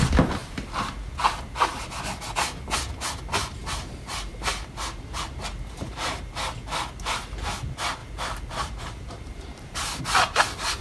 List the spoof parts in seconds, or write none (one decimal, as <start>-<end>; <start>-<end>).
3.6-6.3; 8.0-10.0